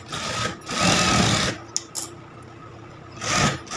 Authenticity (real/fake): real